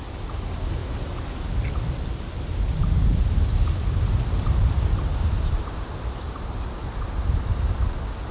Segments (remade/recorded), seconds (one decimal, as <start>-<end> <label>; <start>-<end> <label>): 0.0-3.0 recorded; 3.0-7.0 remade; 7.0-8.3 recorded